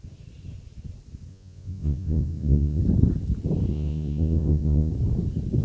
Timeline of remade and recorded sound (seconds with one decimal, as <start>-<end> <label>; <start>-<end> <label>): 0.0-1.3 recorded; 1.3-2.8 remade; 2.8-3.7 recorded; 3.7-4.9 remade; 4.9-5.6 recorded